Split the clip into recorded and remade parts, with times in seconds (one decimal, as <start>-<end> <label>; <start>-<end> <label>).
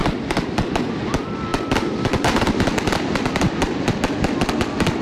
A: 0.0-0.7 remade; 0.7-1.5 recorded; 1.5-4.5 remade; 4.5-5.0 recorded